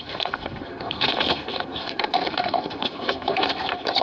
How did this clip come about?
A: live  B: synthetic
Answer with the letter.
B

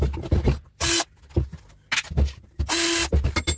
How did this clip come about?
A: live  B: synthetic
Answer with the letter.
A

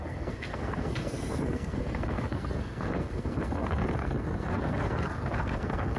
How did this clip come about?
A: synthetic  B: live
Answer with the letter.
A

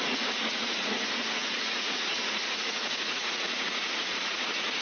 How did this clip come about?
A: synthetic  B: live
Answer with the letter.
A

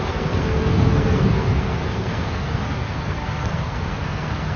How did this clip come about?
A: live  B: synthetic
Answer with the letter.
B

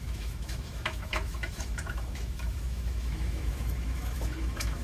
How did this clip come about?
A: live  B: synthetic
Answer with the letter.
B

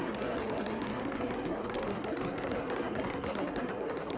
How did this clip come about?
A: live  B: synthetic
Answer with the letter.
B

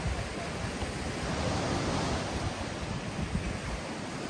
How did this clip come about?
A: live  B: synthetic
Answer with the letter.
A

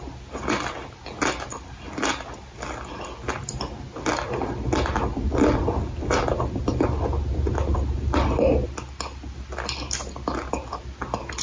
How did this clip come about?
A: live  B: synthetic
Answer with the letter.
A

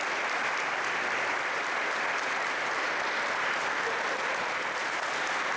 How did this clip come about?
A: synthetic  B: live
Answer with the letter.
B